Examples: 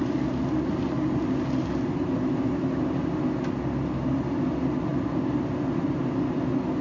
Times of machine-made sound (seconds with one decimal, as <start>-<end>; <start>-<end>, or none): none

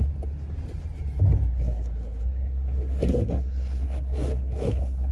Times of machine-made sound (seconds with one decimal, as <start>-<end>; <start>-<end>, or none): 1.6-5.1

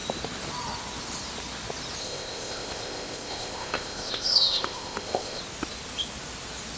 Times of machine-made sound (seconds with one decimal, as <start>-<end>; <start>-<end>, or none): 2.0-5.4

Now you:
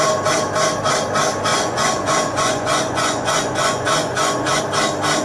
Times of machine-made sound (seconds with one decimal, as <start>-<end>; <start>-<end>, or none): 1.5-4.6

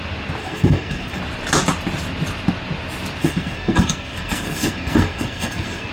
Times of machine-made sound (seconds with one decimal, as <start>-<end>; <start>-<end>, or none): 0.4-1.2; 3.2-5.9

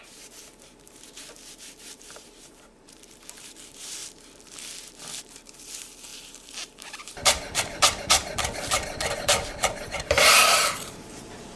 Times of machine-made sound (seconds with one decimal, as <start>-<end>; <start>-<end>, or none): 0.0-4.0; 5.2-8.2; 10.0-11.6